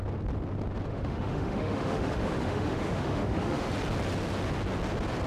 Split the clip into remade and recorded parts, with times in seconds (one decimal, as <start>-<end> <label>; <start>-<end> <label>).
0.0-0.9 recorded; 0.9-3.7 remade; 3.7-5.3 recorded

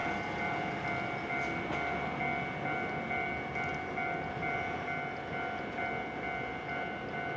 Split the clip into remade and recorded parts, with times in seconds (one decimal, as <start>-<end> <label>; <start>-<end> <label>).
0.0-7.4 recorded

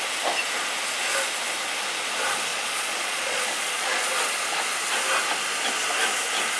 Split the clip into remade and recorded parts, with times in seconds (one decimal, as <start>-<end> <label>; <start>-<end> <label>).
0.0-2.5 recorded; 2.5-4.1 remade; 4.1-6.6 recorded

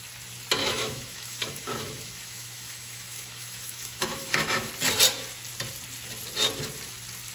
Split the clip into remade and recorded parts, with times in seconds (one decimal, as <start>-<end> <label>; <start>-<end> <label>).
0.0-0.6 recorded; 0.6-4.7 remade; 4.7-7.3 recorded

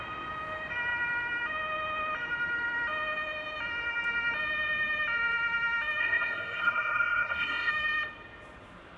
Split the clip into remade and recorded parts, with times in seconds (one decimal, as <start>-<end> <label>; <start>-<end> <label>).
0.0-6.0 recorded; 6.0-7.7 remade; 7.7-9.0 recorded

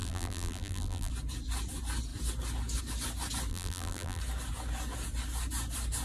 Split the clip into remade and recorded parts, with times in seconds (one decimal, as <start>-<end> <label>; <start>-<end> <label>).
0.0-1.1 remade; 1.1-3.5 recorded; 3.5-4.2 remade; 4.2-6.0 recorded

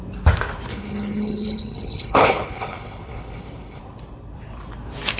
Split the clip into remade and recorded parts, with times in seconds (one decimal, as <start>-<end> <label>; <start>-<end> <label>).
0.0-0.7 recorded; 0.7-3.8 remade; 3.8-5.2 recorded